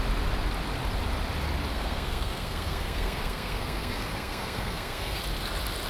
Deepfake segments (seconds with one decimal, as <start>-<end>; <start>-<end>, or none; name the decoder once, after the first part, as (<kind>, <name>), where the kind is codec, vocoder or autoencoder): 1.7-5.2 (codec, SNAC)

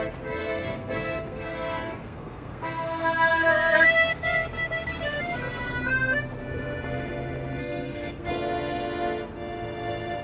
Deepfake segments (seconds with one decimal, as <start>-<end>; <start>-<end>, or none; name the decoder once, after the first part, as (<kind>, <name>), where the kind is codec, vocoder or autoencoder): 0.4-5.2 (codec, SNAC); 7.6-8.3

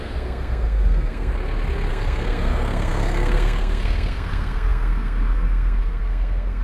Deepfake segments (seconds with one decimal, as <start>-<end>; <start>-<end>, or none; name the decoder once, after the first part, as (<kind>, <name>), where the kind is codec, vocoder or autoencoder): 0.0-1.3 (codec, SNAC); 1.9-6.6

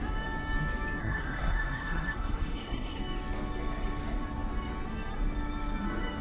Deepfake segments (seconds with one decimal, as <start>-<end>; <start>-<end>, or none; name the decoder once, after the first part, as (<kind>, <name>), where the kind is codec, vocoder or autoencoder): 1.0-3.0 (codec, SNAC)

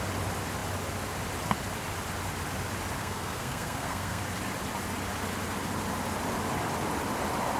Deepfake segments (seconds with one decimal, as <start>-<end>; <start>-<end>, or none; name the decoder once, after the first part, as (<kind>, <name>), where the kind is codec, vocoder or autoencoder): 3.0-4.2 (codec, SNAC)

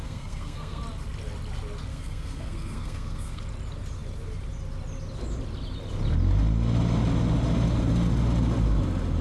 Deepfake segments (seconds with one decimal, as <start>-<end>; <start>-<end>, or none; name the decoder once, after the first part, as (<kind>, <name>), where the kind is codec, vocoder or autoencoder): 0.0-0.8 (codec, SNAC); 1.9-3.4